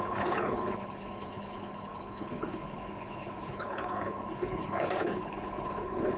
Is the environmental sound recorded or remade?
remade